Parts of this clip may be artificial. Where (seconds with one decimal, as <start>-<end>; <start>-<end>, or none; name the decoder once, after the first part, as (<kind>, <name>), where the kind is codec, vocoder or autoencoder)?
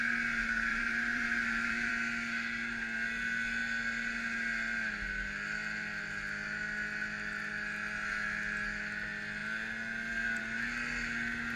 0.7-1.9 (vocoder, BigVGAN v2)